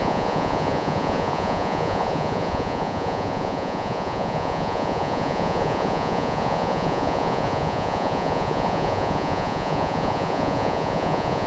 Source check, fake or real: fake